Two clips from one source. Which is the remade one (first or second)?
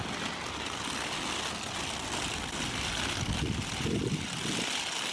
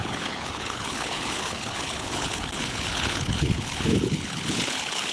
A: second